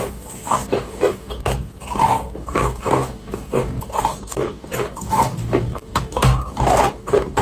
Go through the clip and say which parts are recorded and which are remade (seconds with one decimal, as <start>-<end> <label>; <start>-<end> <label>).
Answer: 0.0-7.4 remade